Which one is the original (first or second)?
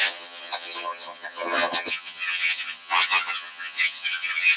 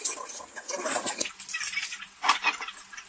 second